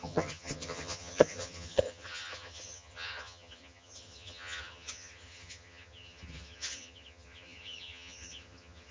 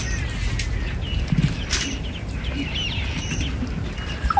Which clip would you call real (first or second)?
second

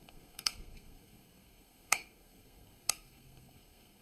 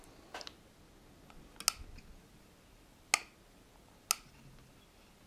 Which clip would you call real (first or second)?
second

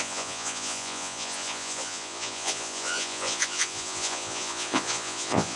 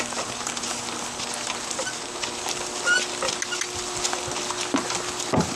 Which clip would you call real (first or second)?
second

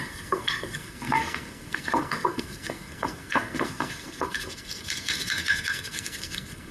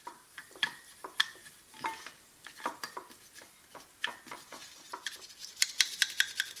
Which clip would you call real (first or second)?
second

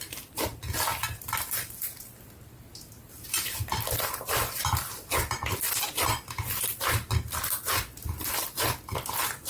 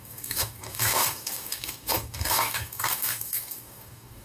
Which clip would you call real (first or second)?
first